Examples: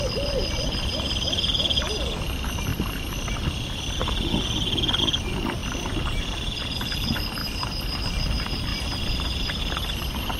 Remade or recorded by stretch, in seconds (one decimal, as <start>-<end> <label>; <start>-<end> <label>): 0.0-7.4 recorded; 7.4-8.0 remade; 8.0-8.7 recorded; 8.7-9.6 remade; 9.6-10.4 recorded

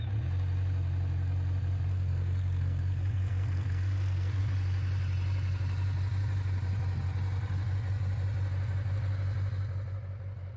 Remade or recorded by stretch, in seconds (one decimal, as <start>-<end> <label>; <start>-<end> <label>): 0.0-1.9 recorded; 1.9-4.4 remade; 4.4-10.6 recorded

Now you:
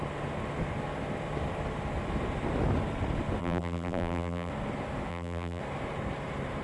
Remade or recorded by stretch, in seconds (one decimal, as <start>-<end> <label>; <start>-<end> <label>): 0.0-3.4 recorded; 3.4-4.5 remade; 4.5-5.1 recorded; 5.1-5.6 remade; 5.6-6.6 recorded

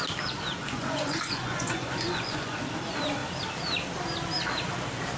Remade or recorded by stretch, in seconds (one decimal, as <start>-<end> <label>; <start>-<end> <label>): 0.0-0.6 recorded; 0.6-2.6 remade; 2.6-5.2 recorded

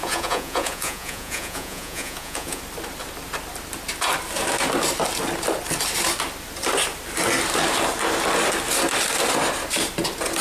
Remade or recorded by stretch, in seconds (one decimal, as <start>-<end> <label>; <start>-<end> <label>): 0.0-2.6 remade; 2.6-10.4 recorded

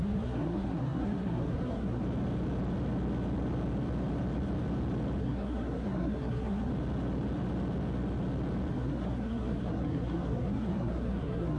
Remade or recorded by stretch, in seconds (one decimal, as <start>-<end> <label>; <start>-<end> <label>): 0.0-2.0 remade; 2.0-5.2 recorded; 5.2-6.7 remade; 6.7-8.7 recorded; 8.7-11.6 remade